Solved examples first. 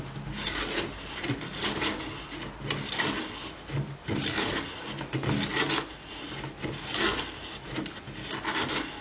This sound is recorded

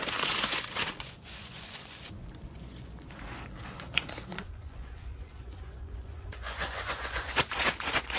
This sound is remade